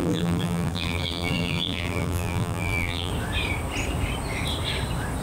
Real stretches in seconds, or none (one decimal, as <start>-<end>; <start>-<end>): 3.1-5.2